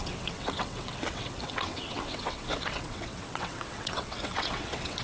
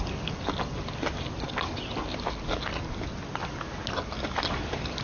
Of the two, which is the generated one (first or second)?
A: first